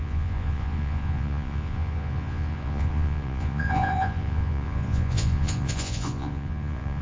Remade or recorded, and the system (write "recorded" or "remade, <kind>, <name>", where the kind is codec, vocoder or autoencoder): remade, vocoder, Vocos